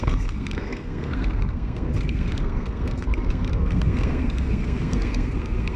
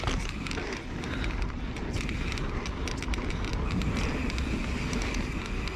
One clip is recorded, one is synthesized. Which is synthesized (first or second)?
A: first